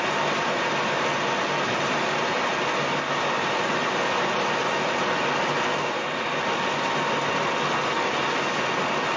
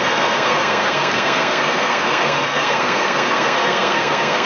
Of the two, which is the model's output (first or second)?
second